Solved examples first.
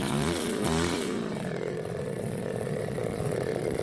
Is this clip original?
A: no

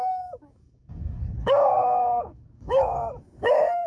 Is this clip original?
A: no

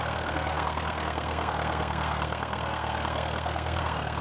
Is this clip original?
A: no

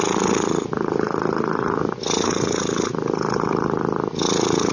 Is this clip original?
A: yes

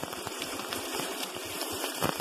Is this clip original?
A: no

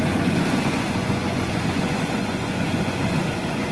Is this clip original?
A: no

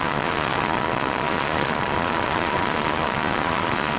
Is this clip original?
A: no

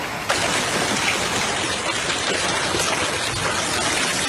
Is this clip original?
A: yes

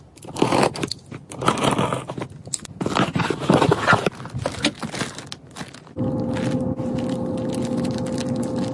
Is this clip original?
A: yes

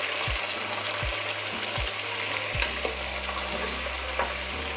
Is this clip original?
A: yes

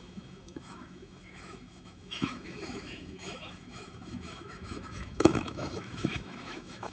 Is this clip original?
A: no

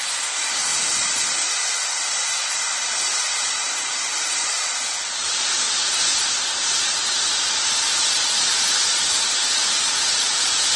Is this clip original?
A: no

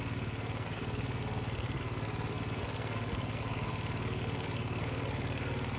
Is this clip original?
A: no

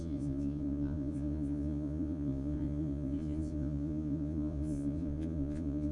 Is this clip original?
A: no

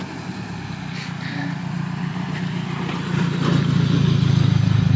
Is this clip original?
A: yes